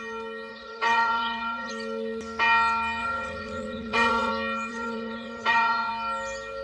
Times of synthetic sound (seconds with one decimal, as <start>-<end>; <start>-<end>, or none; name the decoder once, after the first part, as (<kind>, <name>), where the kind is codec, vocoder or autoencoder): 0.5-1.7 (vocoder, WaveNeXt); 3.0-4.3; 4.7-5.9